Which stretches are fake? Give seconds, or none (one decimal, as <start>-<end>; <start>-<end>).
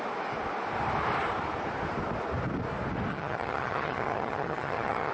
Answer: 3.1-5.1